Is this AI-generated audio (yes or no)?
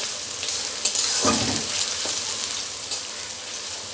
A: no